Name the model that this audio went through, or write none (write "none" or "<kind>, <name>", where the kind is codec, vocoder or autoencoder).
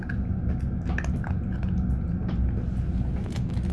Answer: none